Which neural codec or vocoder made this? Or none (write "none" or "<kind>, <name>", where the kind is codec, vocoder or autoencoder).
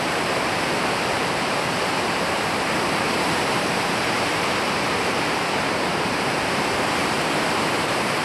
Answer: vocoder, BigVGAN v2